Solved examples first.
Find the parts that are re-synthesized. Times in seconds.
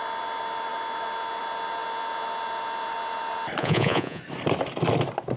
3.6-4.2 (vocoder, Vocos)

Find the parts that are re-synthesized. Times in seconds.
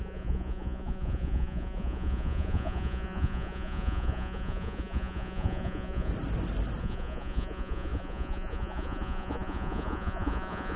0.0-6.1 (vocoder, Vocos); 6.8-10.8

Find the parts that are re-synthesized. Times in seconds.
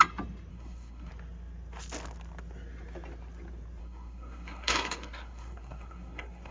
0.5-1.1 (codec, SNAC); 3.8-6.5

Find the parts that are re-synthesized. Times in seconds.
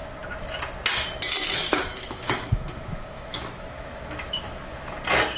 1.7-4.9 (autoencoder, DAC-VAE)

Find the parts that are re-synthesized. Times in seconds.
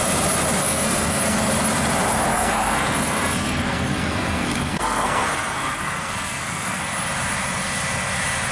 0.6-1.5 (codec, SNAC); 2.3-6.8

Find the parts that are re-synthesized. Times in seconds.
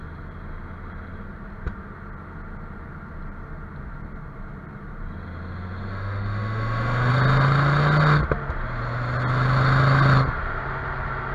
5.9-7.1 (autoencoder, DAC-VAE)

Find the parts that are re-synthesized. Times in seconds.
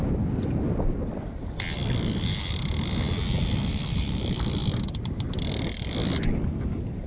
none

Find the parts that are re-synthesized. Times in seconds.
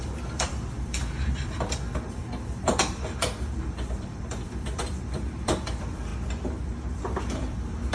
0.0-6.1 (vocoder, BigVGAN v2); 6.9-7.9